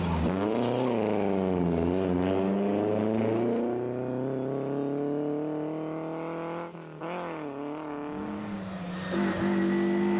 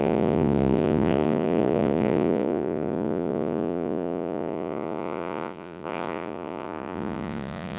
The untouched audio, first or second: first